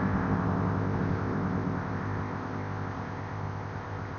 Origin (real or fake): fake